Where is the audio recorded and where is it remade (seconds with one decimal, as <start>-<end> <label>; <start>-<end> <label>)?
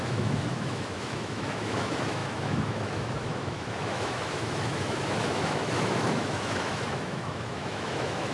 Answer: 0.0-8.3 remade